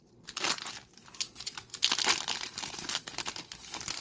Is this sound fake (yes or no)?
no